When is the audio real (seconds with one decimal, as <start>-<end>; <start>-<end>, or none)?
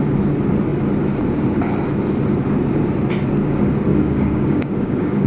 0.0-3.9